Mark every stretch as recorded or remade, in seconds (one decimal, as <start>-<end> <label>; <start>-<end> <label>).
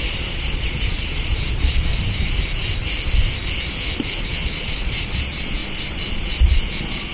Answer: 0.0-1.9 remade; 1.9-4.2 recorded; 4.2-5.6 remade; 5.6-6.1 recorded; 6.1-7.1 remade